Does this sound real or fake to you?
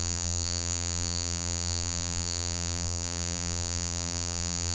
fake